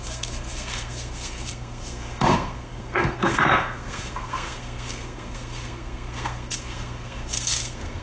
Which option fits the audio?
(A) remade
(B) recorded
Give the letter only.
A